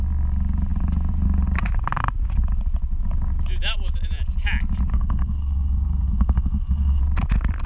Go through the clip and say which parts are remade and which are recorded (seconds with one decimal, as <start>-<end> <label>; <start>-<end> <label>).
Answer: 0.0-4.9 recorded; 4.9-7.0 remade; 7.0-7.7 recorded